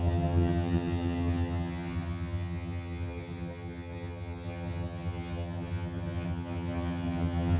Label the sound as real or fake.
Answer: fake